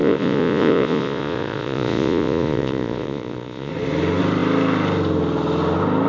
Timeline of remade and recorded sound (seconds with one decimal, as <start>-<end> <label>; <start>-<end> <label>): 0.0-3.7 remade; 3.7-6.1 recorded